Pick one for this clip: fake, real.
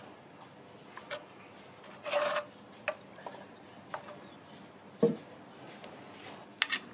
real